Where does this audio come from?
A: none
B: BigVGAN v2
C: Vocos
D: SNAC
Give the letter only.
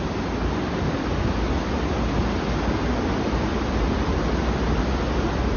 A